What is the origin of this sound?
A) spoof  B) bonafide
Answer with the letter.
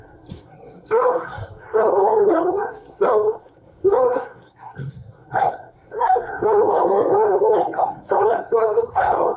A